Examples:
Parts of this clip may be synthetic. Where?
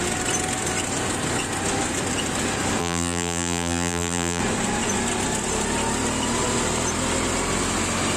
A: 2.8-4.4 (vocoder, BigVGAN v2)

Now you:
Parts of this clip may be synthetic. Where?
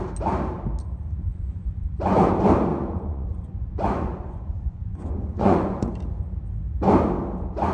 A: 1.2-2.3 (vocoder, Vocos); 2.7-5.9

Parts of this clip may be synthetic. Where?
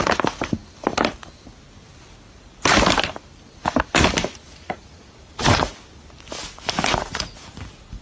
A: 4.2-5.7 (vocoder, Vocos); 6.4-8.0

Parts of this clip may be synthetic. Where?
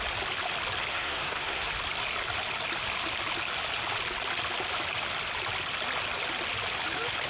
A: 0.9-1.7 (codec, SNAC)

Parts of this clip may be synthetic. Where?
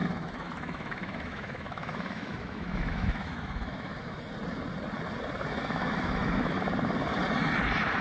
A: 0.0-4.2 (autoencoder, DAC-VAE); 5.6-6.6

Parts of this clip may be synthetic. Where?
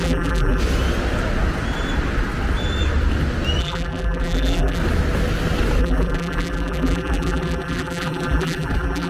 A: 0.0-0.6 (vocoder, BigVGAN v2); 3.6-4.8; 5.8-9.1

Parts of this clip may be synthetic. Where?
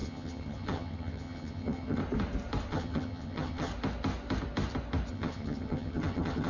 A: 0.0-2.0 (vocoder, HiFi-GAN); 2.7-3.7; 5.1-6.5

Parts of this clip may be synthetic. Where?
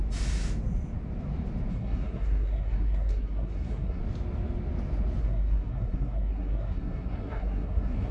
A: 1.7-4.0 (codec, SNAC); 5.2-8.1